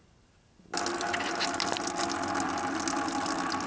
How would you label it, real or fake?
real